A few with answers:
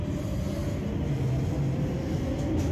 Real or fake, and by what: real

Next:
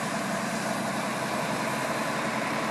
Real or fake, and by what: real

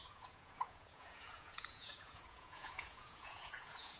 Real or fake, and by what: fake, vocoder, Vocos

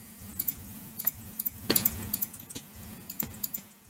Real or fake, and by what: fake, vocoder, Vocos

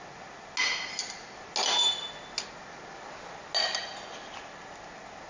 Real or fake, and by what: real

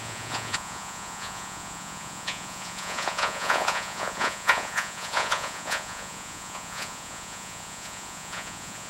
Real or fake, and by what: fake, vocoder, Vocos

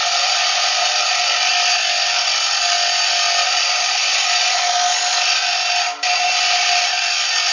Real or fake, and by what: real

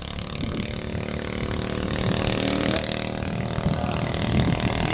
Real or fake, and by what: real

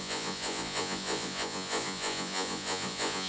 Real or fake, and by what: fake, vocoder, Vocos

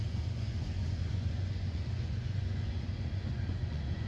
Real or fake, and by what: fake, vocoder, Vocos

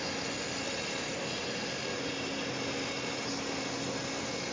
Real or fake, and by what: real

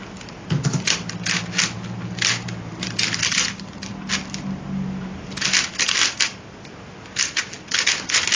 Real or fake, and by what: real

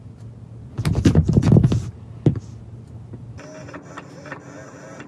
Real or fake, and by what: real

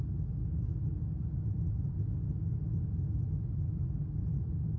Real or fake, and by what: real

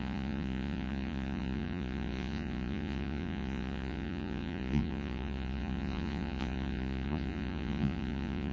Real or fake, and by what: fake, vocoder, Vocos